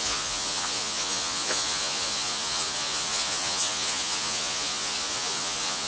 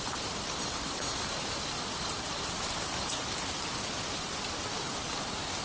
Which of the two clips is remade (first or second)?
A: first